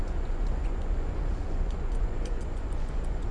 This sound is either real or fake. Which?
fake